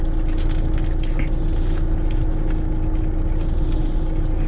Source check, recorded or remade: recorded